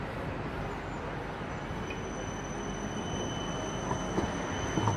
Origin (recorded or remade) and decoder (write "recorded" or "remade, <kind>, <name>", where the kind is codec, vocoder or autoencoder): recorded